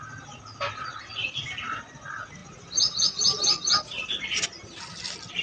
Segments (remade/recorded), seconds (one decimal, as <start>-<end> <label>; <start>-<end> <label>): 0.0-5.4 recorded